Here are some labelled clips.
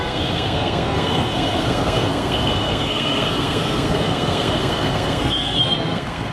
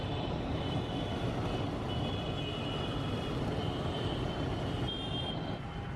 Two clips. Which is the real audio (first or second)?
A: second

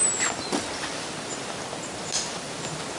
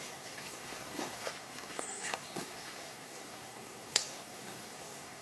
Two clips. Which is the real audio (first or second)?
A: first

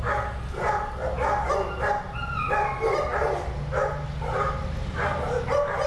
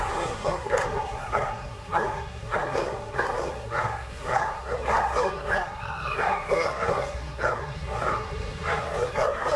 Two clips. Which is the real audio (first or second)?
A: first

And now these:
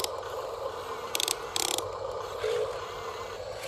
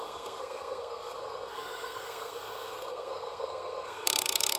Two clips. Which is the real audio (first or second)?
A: first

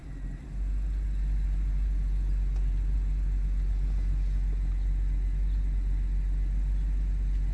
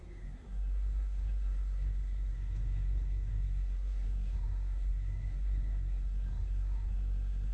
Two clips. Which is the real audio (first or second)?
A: first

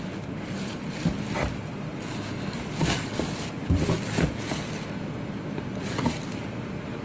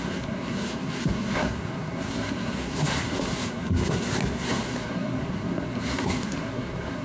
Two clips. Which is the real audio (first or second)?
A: first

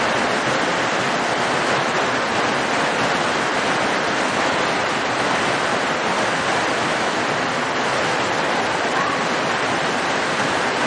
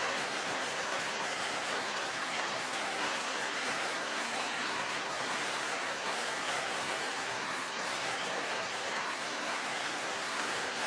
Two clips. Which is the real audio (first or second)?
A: first